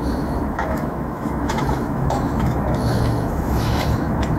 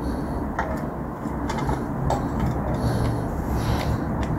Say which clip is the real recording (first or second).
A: second